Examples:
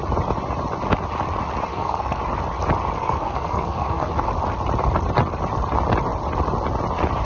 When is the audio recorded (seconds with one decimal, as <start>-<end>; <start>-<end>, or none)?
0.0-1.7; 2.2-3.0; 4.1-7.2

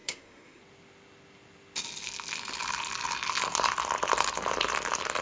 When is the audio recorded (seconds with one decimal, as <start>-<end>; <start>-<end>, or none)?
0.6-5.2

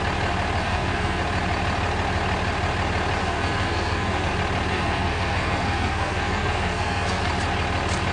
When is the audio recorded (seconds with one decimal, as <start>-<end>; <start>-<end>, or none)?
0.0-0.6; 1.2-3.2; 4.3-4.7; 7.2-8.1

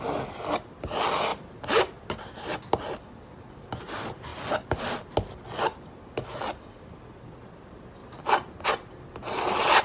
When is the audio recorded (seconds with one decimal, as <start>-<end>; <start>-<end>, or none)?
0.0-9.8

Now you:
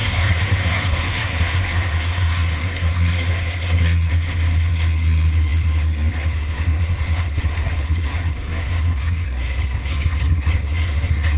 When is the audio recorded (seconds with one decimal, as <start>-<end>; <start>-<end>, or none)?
4.1-4.7

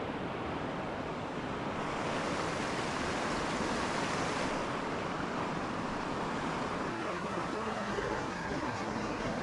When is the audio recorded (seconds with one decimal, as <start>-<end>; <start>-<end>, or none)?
0.0-6.9

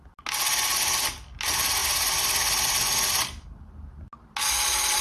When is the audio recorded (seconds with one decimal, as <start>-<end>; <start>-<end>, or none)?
0.0-5.0